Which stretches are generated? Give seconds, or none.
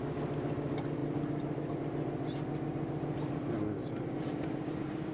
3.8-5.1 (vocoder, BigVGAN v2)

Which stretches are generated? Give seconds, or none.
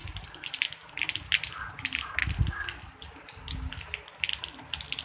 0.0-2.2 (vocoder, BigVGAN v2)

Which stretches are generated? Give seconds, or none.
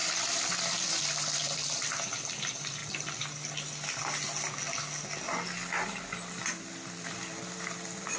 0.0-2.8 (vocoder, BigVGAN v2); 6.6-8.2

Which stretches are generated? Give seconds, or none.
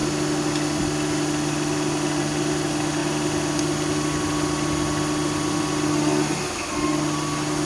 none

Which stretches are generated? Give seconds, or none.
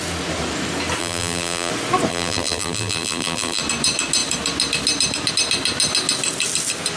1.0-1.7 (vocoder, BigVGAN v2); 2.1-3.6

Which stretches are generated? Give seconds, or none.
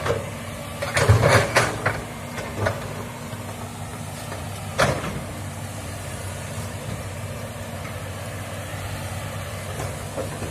3.9-7.7 (vocoder, BigVGAN v2); 8.7-9.5